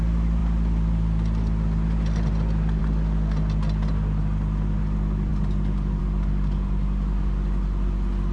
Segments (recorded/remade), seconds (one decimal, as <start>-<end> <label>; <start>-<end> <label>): 0.0-0.4 recorded; 0.4-2.8 remade; 2.8-8.3 recorded